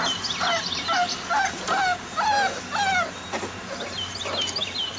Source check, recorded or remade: recorded